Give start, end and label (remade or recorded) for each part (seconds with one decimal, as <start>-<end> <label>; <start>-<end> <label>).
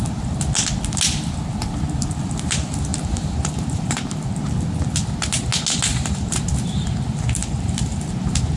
0.0-2.9 recorded; 2.9-4.2 remade; 4.2-5.9 recorded; 5.9-6.5 remade; 6.5-7.4 recorded; 7.4-8.6 remade